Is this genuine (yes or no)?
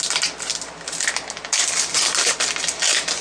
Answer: yes